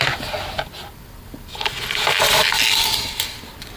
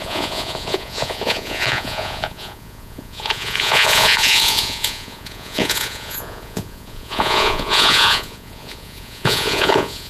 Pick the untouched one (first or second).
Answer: first